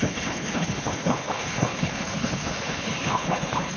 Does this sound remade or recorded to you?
remade